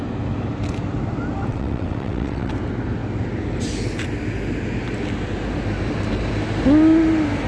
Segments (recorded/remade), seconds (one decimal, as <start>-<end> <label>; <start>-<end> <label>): 0.0-1.5 recorded; 1.5-2.5 remade; 2.5-7.5 recorded